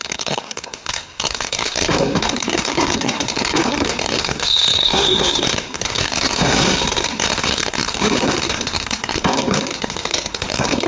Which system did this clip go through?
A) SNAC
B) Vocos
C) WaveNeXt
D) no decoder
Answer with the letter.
A